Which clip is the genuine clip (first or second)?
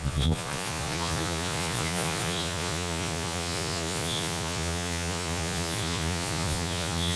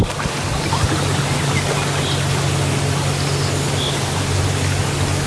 second